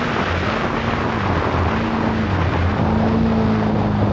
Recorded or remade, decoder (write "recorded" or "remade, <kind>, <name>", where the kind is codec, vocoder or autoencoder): recorded